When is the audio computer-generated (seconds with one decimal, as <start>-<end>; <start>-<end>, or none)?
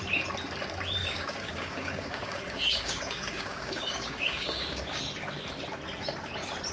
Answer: 1.0-5.0